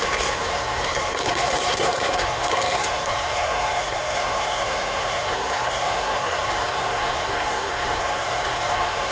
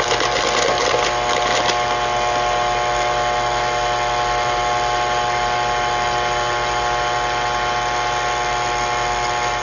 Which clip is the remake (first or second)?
first